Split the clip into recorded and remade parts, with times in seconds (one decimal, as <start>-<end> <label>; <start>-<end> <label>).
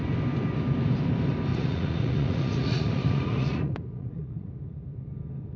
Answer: 0.0-1.5 recorded; 1.5-4.5 remade; 4.5-5.6 recorded